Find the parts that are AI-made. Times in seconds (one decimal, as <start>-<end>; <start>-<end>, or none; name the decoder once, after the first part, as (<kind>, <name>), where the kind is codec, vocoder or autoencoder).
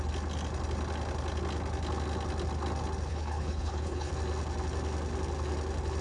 3.1-4.1 (codec, HILCodec)